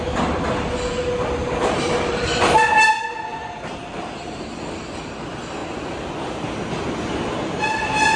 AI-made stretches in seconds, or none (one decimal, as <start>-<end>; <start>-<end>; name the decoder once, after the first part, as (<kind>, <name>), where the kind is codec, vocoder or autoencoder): 1.4-2.4 (vocoder, BigVGAN v2); 3.4-4.5